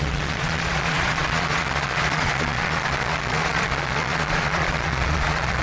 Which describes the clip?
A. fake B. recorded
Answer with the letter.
A